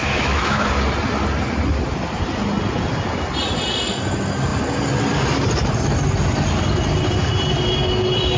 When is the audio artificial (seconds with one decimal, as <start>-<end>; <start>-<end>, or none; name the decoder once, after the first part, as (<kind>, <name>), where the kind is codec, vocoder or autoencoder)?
0.0-0.7 (autoencoder, DAC-VAE)